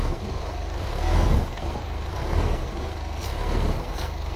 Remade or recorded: remade